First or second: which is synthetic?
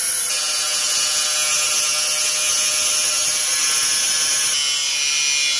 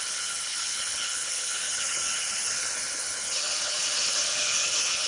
second